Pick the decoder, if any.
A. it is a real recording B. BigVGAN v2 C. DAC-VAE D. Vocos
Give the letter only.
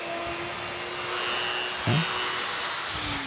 A